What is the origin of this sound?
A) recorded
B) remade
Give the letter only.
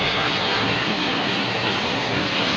B